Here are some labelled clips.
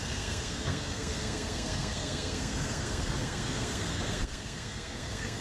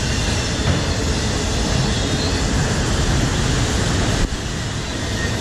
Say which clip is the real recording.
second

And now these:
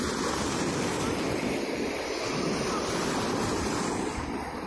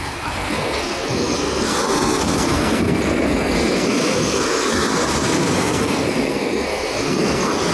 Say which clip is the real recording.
first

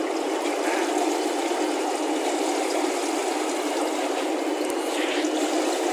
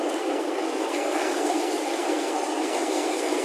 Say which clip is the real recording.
first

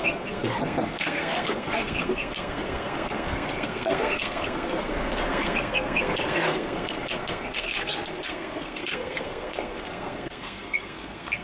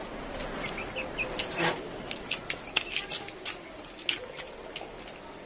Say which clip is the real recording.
second